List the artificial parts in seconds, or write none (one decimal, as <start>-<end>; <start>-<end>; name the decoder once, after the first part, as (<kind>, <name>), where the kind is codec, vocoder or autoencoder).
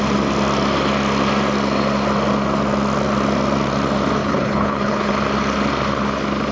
4.2-5.1 (codec, HILCodec)